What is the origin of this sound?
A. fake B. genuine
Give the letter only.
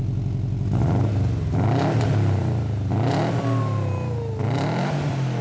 B